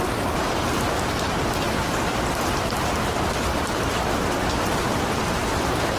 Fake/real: real